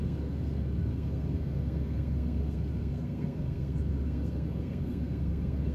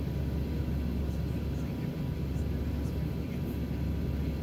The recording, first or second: second